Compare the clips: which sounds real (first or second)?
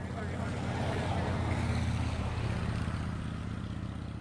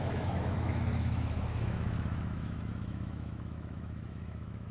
first